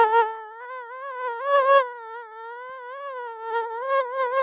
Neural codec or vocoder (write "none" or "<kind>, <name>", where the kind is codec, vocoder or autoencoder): none